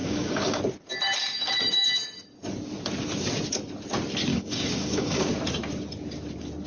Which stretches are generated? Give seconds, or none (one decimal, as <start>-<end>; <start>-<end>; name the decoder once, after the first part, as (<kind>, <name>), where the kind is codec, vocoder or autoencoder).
0.0-0.6 (codec, DAC); 4.3-5.3